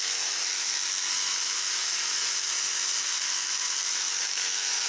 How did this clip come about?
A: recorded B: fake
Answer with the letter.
B